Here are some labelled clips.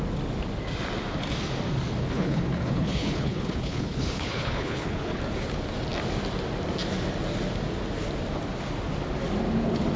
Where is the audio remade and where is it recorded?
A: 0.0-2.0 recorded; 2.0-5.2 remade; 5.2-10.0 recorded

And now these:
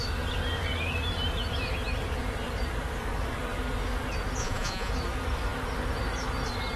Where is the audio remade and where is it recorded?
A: 0.0-4.4 recorded; 4.4-4.9 remade; 4.9-6.8 recorded